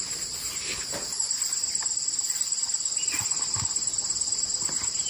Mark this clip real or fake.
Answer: fake